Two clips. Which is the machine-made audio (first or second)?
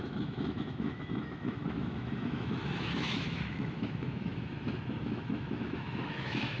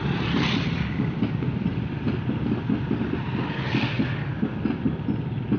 first